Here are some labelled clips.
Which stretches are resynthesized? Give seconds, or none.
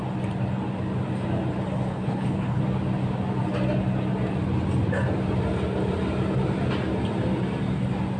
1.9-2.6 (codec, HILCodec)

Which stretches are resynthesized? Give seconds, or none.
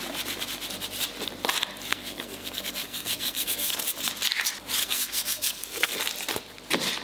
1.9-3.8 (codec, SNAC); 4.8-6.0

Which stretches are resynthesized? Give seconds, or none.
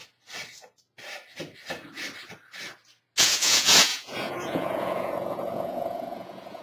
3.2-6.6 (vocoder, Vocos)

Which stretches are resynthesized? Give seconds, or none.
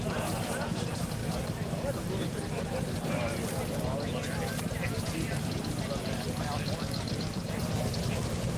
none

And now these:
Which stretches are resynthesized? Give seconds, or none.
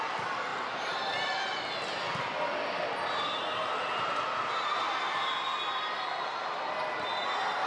none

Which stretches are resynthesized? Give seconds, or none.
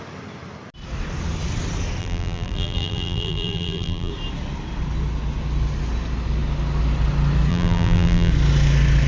2.0-4.1 (vocoder, BigVGAN v2); 7.5-8.3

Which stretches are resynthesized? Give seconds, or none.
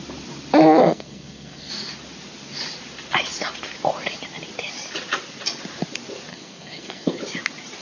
0.8-1.7 (codec, SNAC); 6.3-7.2